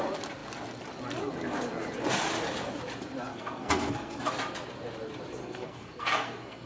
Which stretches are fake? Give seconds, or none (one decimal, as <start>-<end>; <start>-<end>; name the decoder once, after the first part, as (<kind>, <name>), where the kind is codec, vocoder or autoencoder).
3.3-4.3 (codec, SNAC); 5.4-6.7

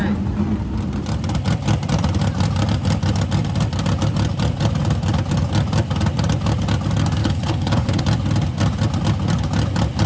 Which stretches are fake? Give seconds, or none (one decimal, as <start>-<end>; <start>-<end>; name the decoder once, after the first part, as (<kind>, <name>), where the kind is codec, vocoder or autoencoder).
7.2-8.0 (codec, HILCodec)

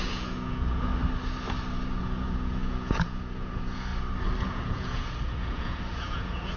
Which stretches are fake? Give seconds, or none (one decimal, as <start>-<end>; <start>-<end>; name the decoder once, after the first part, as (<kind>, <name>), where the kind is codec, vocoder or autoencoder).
0.0-0.9 (vocoder, Vocos); 2.0-3.9; 4.4-6.6

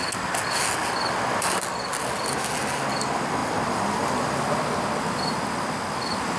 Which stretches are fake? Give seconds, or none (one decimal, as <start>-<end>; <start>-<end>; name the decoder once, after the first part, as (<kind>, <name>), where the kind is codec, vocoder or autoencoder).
none

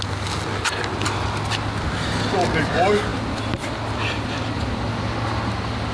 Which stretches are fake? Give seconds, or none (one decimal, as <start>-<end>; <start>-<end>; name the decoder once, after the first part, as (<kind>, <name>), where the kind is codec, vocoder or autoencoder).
none

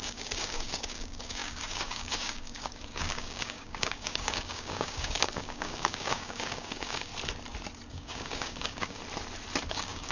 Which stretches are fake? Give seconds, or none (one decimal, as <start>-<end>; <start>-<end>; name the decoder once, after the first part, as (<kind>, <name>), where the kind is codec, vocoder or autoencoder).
0.0-7.1 (codec, DAC); 7.9-9.0; 9.7-10.1

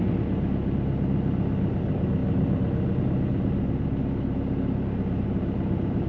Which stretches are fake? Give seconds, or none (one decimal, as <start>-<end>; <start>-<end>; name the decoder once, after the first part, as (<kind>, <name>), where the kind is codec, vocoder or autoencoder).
none